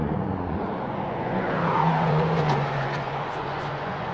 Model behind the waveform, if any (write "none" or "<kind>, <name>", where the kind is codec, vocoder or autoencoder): vocoder, Vocos